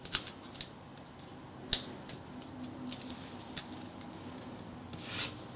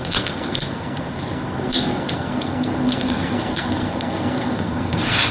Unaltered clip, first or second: first